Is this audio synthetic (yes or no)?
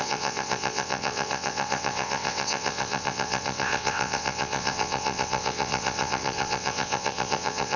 yes